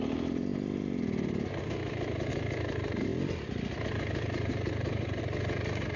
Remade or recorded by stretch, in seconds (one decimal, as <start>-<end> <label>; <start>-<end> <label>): 0.0-6.0 recorded